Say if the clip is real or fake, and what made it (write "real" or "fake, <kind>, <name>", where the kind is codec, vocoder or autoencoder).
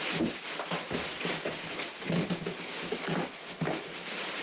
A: fake, vocoder, BigVGAN v2